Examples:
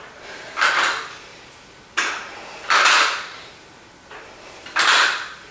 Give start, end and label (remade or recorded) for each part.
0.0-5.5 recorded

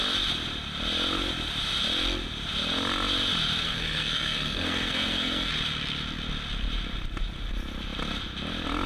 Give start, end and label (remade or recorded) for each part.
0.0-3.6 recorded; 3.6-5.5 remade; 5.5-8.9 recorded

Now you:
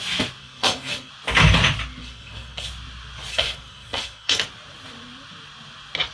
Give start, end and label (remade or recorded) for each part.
0.0-0.4 recorded; 0.4-1.1 remade; 1.1-2.0 recorded; 2.0-2.7 remade; 2.7-3.3 recorded; 3.3-4.4 remade; 4.4-6.1 recorded